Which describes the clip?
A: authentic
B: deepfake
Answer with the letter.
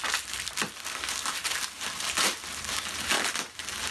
A